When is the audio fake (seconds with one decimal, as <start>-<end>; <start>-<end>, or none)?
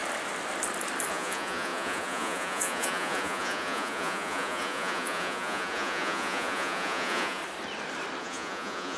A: 1.1-7.4; 8.2-9.0